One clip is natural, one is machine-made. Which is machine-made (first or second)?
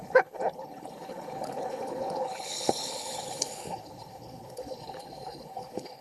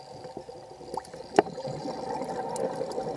first